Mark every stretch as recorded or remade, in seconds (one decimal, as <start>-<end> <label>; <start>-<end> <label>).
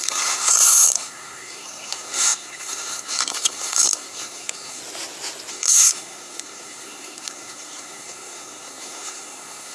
0.0-4.8 remade; 4.8-5.5 recorded; 5.5-9.7 remade